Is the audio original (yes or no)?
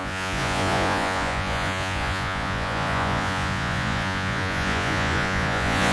no